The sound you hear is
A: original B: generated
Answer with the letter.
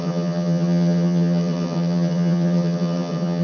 B